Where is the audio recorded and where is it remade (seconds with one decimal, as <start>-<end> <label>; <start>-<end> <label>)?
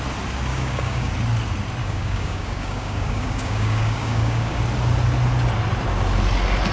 0.0-0.5 recorded; 0.5-1.1 remade; 1.1-1.8 recorded; 1.8-4.6 remade; 4.6-6.7 recorded